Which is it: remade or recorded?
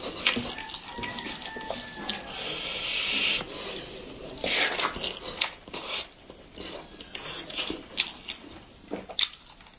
recorded